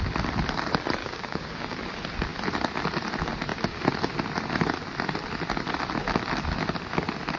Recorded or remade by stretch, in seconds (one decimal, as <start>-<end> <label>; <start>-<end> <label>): 0.0-1.0 recorded; 1.0-1.8 remade; 1.8-7.4 recorded